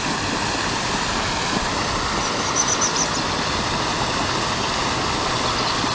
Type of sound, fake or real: real